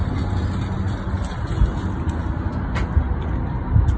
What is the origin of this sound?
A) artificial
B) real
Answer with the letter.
B